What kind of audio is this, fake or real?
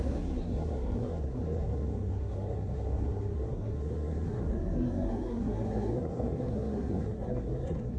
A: fake